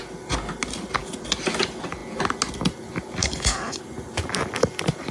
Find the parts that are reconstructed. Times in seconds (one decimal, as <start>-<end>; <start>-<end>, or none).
3.2-3.8